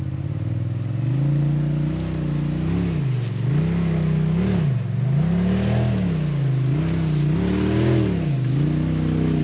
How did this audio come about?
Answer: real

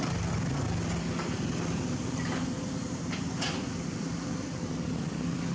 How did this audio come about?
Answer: real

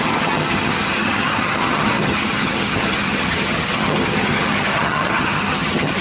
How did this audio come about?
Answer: fake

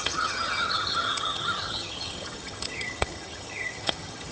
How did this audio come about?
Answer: fake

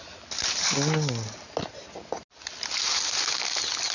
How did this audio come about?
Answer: real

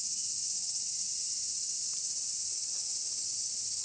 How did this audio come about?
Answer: real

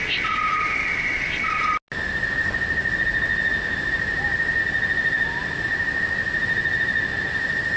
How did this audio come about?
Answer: real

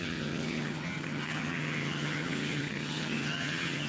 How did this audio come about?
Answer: fake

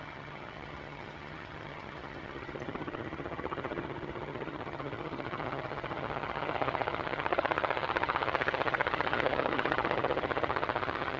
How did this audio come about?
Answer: fake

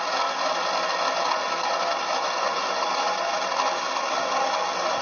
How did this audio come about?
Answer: real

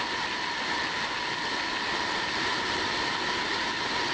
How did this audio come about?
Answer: real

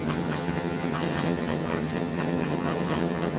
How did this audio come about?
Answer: fake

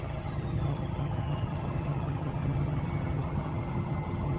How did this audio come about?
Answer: fake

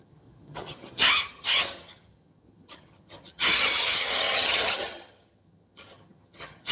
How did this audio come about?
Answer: fake